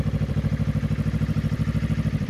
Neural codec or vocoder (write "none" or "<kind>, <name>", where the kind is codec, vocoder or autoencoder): vocoder, BigVGAN v2